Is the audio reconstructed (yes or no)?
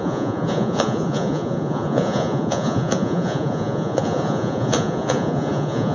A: yes